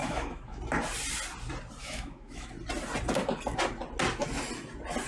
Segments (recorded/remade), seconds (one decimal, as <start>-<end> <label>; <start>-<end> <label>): 0.0-0.6 remade; 0.6-1.8 recorded; 1.8-2.5 remade; 2.5-5.1 recorded